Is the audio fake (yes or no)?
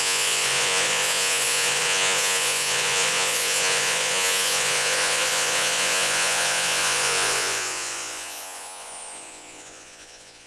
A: yes